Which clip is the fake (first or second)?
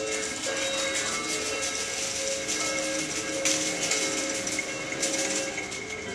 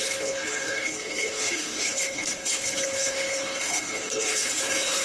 second